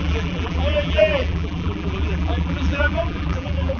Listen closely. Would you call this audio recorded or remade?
remade